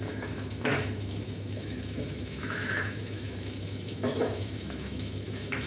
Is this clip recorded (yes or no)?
no